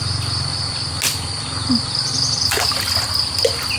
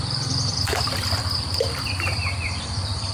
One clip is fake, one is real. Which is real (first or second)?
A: first